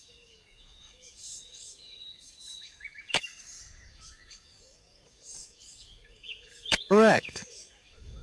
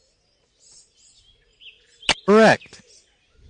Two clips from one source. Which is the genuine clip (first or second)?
second